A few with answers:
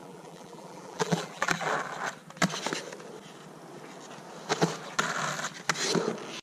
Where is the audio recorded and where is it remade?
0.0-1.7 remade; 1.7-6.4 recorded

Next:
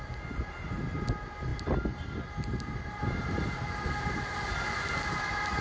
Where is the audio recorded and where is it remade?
0.0-5.6 recorded